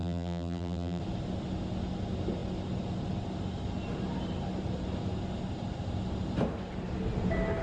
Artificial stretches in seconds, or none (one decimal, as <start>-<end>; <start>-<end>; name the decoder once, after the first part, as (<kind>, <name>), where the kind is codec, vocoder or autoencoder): 0.0-1.0 (vocoder, BigVGAN v2)